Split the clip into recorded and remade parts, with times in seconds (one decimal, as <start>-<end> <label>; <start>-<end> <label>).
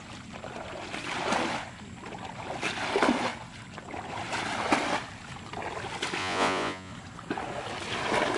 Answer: 0.0-6.2 recorded; 6.2-6.9 remade; 6.9-8.4 recorded